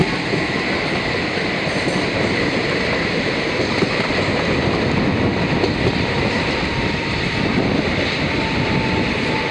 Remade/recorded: recorded